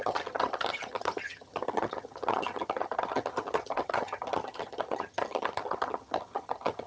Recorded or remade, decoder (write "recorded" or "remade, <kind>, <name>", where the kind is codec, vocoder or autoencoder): remade, vocoder, HiFi-GAN